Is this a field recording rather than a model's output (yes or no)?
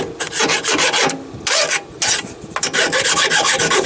yes